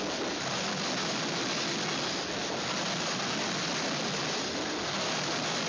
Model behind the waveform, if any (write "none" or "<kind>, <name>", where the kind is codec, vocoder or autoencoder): none